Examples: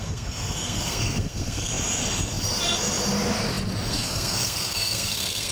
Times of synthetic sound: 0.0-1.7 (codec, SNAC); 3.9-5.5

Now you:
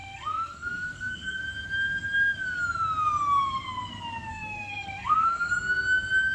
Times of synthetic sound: 0.0-1.4 (codec, SNAC); 4.3-5.5

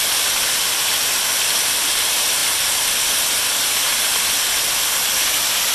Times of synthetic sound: none

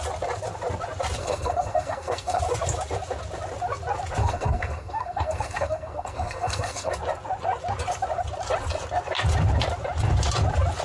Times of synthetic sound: 1.2-2.4 (codec, SNAC); 4.2-6.9

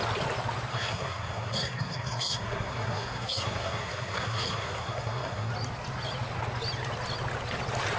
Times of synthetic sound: 0.7-5.5 (codec, SNAC)

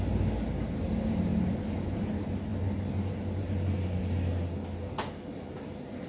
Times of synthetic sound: none

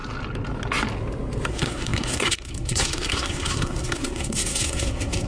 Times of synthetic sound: 1.5-5.3 (codec, SNAC)